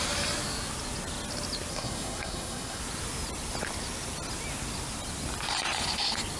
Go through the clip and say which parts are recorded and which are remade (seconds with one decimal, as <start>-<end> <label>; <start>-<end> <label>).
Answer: 0.0-1.7 recorded; 1.7-2.8 remade; 2.8-6.4 recorded